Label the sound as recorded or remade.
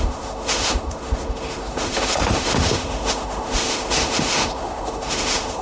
remade